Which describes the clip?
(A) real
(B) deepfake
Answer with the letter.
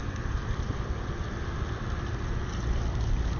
A